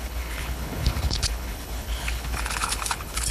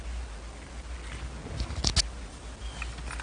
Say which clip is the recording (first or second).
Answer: second